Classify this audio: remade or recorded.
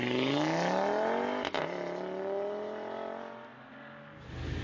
recorded